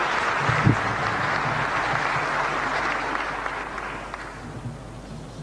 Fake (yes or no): no